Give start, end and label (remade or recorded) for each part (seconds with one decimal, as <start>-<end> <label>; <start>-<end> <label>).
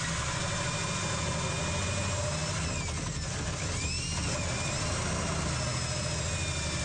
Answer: 0.0-6.8 recorded